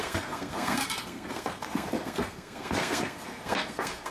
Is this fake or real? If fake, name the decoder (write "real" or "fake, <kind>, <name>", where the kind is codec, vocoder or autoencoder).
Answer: fake, codec, SNAC